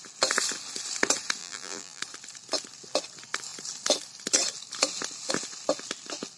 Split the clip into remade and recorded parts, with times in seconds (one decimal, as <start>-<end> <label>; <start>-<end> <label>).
0.0-1.4 recorded; 1.4-2.0 remade; 2.0-6.4 recorded